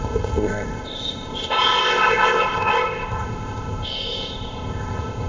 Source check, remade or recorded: remade